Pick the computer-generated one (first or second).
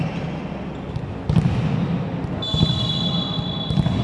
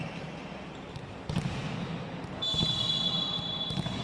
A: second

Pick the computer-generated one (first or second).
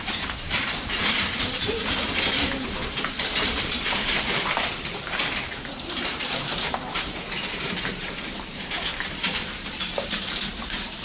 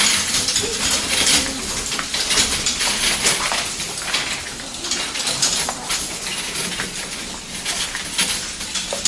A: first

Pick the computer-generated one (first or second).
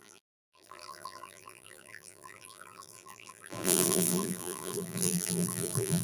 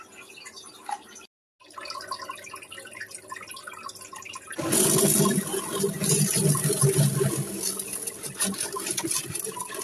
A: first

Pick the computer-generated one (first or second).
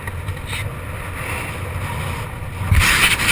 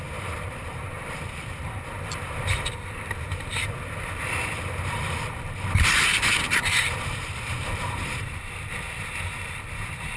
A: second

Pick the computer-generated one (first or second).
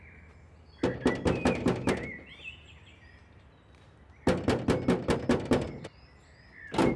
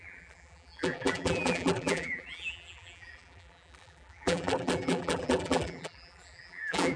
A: second